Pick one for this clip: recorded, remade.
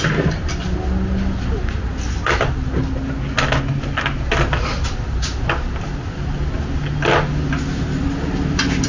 recorded